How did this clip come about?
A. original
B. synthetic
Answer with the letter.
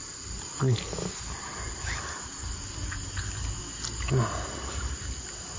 A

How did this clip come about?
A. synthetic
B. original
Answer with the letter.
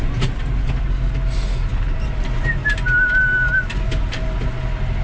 B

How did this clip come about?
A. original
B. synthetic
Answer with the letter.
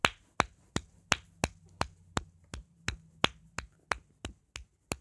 A